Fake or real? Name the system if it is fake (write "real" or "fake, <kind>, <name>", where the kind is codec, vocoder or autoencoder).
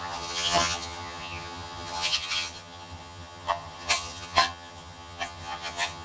fake, vocoder, HiFi-GAN